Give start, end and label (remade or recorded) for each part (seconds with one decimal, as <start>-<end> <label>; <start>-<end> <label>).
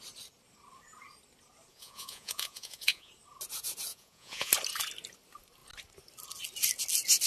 0.0-1.7 recorded; 1.7-3.1 remade; 3.1-3.9 recorded; 3.9-4.5 remade; 4.5-7.3 recorded